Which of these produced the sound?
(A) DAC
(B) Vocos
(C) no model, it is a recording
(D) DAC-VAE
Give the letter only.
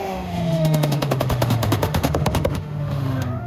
D